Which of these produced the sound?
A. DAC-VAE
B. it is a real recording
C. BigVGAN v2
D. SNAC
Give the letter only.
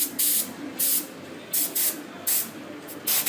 B